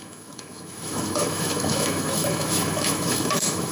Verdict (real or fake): fake